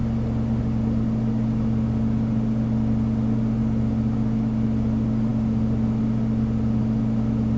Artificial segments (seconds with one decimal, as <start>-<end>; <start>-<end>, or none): none